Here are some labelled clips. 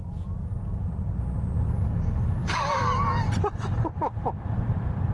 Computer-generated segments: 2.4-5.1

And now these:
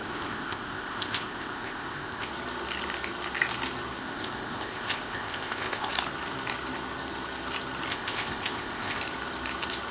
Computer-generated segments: 0.0-2.3; 4.0-5.9; 7.9-9.0

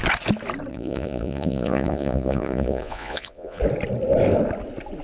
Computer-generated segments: 0.7-3.6

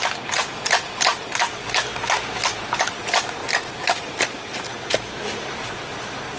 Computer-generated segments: none

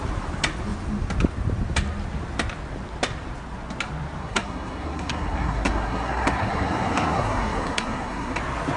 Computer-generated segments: 4.2-8.4